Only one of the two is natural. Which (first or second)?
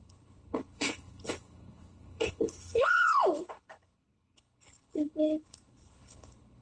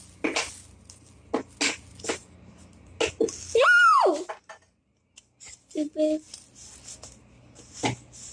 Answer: second